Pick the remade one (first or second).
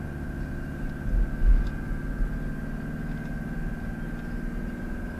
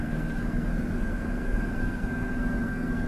second